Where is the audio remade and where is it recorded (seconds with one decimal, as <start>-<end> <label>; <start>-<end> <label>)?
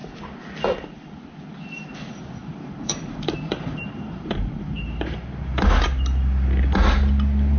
0.0-2.4 recorded; 2.4-5.7 remade; 5.7-7.6 recorded